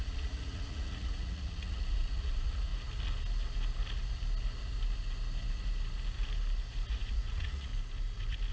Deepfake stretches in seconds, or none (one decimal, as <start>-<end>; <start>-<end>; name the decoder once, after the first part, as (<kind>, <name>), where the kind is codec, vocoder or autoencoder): 0.0-2.7 (vocoder, Vocos); 6.9-7.7